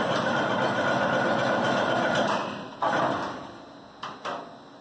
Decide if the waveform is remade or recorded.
recorded